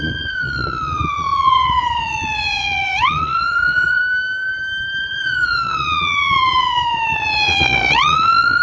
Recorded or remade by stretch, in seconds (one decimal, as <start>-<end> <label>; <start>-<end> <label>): 0.0-4.0 remade; 4.0-5.0 recorded; 5.0-8.6 remade